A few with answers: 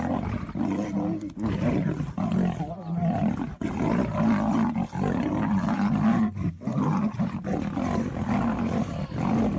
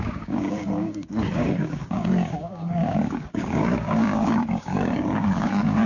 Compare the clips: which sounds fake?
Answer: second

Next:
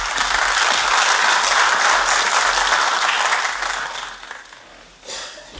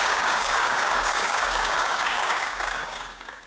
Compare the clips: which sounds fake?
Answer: second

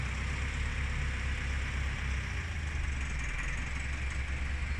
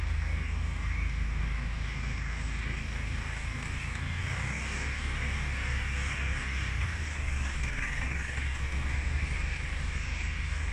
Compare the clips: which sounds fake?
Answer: second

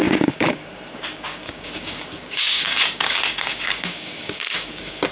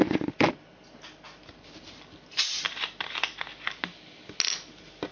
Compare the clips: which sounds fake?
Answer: first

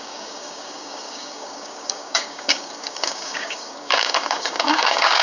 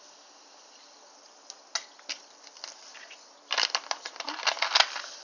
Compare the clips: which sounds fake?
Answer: first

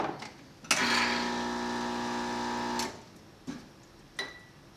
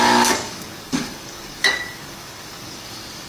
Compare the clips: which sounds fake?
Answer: second